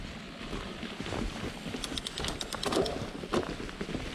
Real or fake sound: real